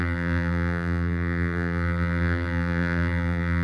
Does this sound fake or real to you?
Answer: fake